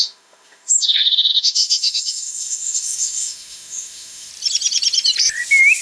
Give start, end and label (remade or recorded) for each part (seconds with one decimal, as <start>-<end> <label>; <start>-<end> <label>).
0.0-4.3 remade; 4.3-5.8 recorded